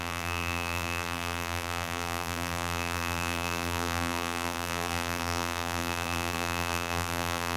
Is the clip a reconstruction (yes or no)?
yes